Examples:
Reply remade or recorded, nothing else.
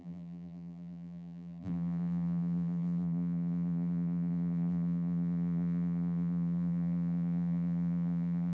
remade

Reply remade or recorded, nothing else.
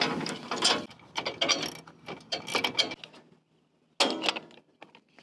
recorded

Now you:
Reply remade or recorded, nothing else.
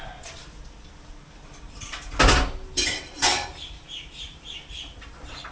recorded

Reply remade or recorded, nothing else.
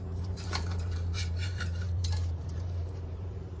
remade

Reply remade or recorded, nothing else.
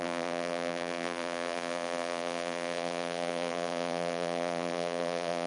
remade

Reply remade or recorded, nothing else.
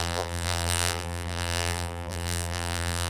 remade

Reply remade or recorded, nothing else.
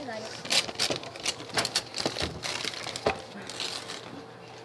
recorded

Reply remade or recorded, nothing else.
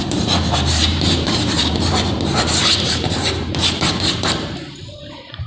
remade